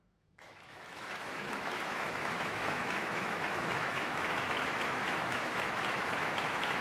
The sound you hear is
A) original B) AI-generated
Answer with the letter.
B